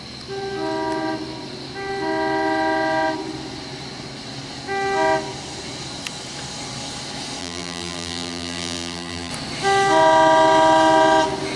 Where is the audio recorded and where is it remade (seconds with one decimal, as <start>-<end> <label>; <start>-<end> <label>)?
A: 0.0-7.4 recorded; 7.4-9.3 remade; 9.3-11.6 recorded